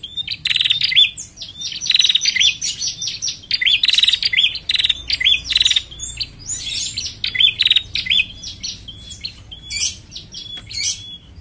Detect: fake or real real